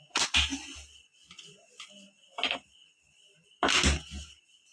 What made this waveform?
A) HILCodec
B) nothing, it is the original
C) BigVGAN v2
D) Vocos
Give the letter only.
B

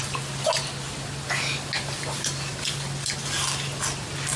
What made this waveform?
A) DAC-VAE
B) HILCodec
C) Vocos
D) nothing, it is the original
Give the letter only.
D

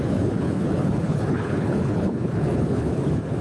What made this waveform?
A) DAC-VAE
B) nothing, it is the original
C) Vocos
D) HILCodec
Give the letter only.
D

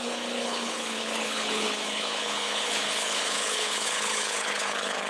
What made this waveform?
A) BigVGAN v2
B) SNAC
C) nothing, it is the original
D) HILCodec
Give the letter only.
D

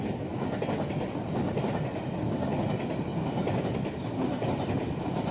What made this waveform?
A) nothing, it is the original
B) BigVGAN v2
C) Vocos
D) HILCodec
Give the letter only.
A